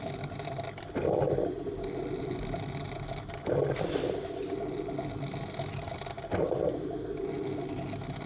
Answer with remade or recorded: recorded